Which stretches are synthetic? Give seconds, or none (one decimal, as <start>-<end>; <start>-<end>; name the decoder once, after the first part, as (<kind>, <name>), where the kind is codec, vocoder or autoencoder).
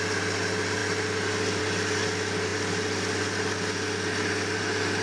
none